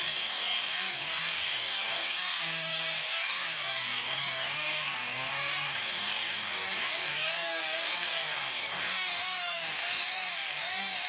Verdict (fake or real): fake